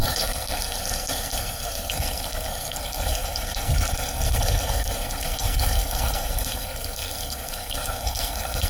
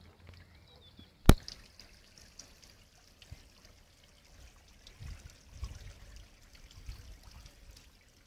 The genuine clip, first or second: second